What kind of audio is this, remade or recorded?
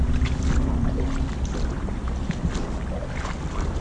recorded